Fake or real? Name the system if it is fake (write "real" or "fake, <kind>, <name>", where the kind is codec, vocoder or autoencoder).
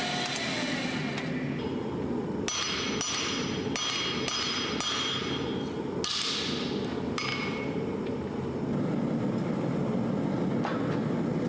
real